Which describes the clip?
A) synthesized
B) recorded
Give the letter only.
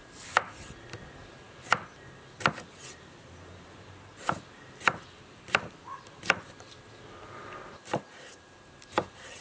B